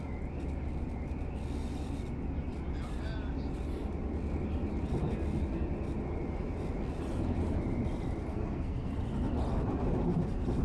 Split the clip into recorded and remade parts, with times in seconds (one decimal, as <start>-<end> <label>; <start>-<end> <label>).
0.0-8.3 recorded; 8.3-9.0 remade; 9.0-10.6 recorded